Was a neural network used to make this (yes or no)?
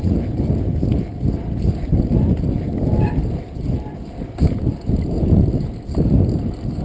no